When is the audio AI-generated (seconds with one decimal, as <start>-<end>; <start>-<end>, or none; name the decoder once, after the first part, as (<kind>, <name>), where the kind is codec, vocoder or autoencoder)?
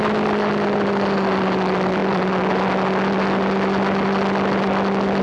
none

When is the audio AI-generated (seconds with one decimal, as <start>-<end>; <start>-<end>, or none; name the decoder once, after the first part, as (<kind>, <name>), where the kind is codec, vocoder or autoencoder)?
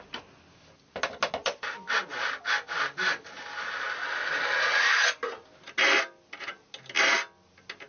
1.4-2.0 (vocoder, BigVGAN v2)